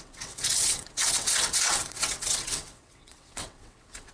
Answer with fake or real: fake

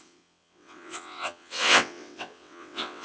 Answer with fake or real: fake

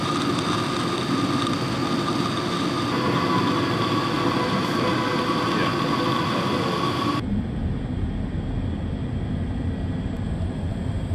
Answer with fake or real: real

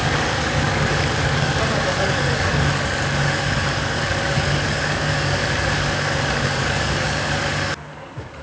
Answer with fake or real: fake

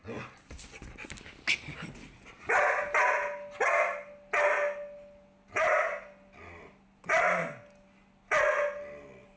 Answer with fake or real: real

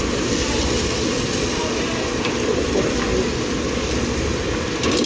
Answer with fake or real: real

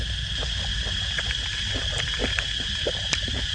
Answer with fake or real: real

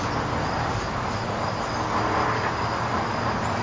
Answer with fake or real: real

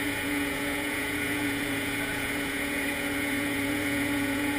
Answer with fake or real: fake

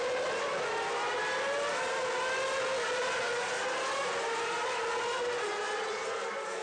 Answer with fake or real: real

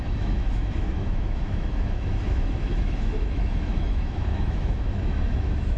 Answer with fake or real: fake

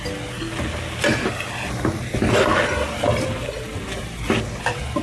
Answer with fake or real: real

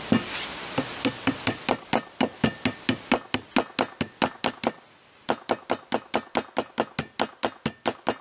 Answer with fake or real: real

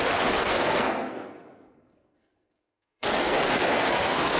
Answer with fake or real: fake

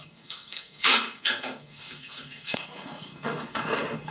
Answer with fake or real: fake